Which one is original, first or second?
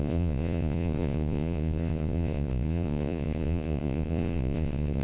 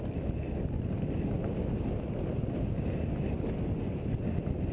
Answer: second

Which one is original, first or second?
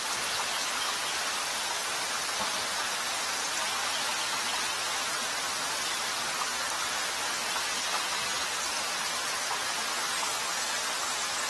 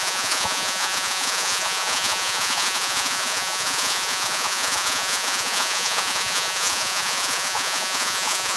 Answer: first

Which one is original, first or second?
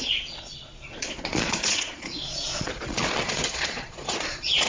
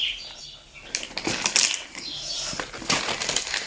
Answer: second